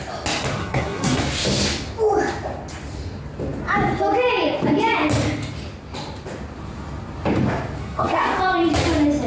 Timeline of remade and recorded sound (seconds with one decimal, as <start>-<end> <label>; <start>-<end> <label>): 0.0-0.6 recorded; 0.6-1.2 remade; 1.2-7.8 recorded; 7.8-8.4 remade; 8.4-9.3 recorded